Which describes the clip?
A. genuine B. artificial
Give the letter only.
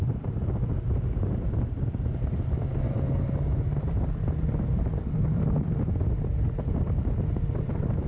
B